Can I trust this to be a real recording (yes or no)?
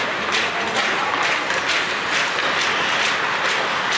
yes